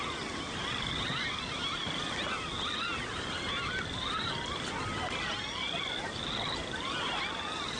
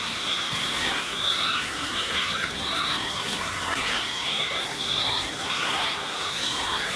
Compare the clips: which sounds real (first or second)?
first